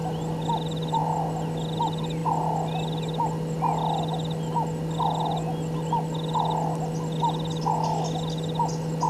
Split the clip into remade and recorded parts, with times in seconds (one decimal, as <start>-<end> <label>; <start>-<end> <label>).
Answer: 0.0-9.1 recorded